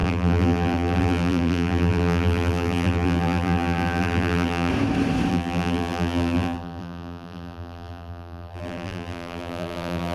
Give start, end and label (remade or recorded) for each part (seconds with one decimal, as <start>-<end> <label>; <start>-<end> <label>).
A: 0.0-4.7 remade; 4.7-5.3 recorded; 5.3-10.1 remade